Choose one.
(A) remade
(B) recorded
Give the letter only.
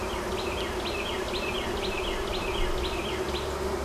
B